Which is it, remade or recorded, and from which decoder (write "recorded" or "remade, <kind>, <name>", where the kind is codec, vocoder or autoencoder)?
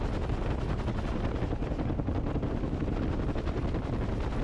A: recorded